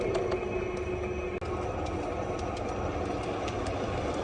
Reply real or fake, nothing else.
real